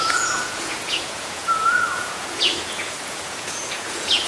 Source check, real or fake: fake